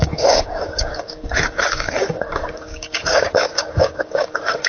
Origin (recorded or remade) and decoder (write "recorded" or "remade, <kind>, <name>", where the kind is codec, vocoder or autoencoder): remade, codec, DAC